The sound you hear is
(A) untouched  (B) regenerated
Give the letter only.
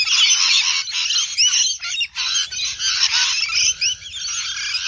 A